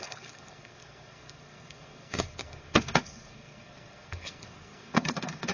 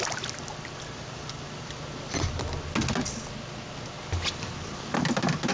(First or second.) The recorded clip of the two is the second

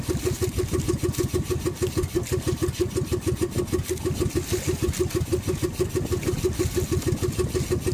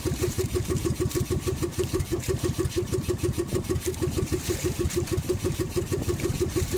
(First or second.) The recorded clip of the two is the first